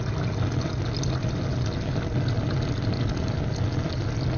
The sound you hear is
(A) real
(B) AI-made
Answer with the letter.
A